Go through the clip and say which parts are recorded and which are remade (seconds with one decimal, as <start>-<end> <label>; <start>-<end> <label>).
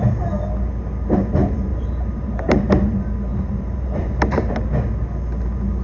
0.0-1.7 recorded; 1.7-2.6 remade; 2.6-3.3 recorded; 3.3-4.5 remade; 4.5-5.8 recorded